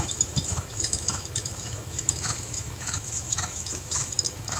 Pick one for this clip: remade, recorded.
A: remade